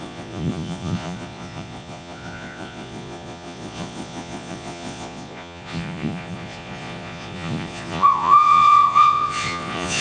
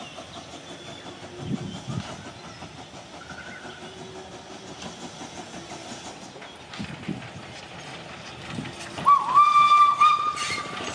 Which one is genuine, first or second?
second